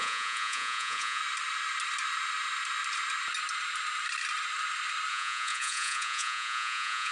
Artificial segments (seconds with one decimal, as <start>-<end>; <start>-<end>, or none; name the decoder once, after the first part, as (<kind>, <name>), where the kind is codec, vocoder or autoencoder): 0.0-1.2 (vocoder, Vocos); 5.1-7.1

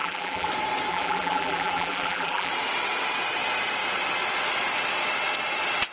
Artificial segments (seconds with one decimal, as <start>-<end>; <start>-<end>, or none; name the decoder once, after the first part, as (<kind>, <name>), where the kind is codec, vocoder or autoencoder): 0.0-0.5 (vocoder, BigVGAN v2); 0.9-2.5

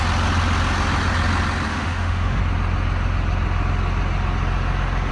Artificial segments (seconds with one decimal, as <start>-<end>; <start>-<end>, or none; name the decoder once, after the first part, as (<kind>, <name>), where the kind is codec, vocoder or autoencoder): 1.7-2.4 (autoencoder, DAC-VAE)